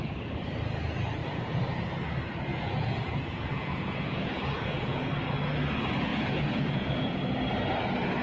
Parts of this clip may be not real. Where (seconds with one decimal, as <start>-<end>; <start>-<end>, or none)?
1.2-1.7; 2.5-5.1; 6.1-7.2

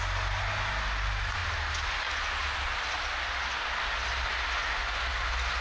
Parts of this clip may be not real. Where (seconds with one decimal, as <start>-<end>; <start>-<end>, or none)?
4.6-5.1

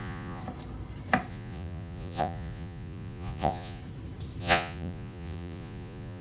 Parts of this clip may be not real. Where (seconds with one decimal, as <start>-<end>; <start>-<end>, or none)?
0.0-0.4; 1.3-3.8; 4.4-6.2

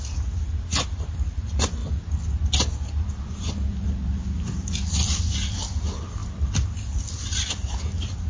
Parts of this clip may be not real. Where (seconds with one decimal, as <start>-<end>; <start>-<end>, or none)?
none

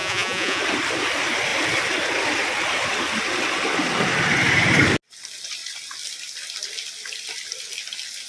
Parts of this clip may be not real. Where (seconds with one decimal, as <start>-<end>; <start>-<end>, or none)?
0.0-0.6

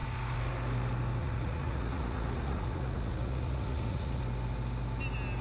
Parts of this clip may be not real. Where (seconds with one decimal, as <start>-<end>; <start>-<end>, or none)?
1.2-4.2

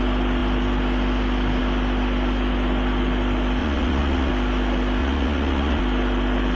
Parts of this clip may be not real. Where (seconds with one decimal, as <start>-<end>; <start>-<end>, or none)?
3.6-4.3; 5.0-5.8

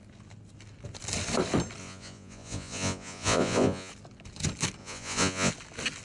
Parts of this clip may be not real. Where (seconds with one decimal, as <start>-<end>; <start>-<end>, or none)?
1.8-3.9; 4.8-5.5